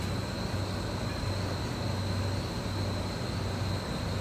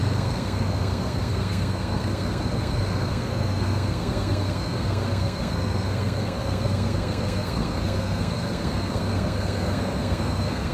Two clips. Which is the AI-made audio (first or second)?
second